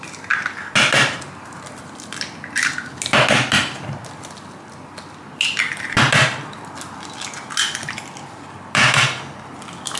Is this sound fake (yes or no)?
no